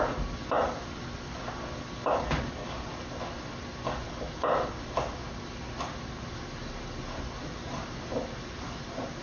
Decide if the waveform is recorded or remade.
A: recorded